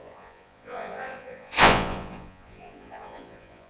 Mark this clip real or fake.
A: fake